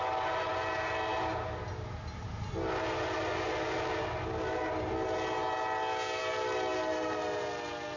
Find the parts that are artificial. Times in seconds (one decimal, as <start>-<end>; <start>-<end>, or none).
none

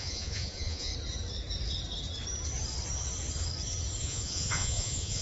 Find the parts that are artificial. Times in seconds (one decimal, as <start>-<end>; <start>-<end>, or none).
0.0-0.9; 4.0-5.2

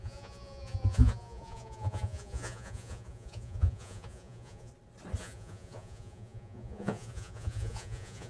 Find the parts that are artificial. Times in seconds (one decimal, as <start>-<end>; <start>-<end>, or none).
0.0-4.7; 5.2-8.3

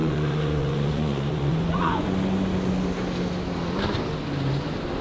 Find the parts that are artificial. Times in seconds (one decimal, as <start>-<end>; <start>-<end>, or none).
0.0-2.1

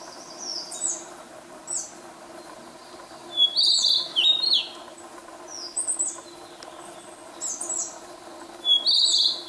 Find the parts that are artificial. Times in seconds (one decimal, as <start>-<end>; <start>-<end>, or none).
none

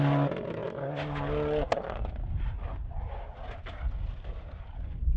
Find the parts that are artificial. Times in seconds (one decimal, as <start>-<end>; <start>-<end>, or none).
none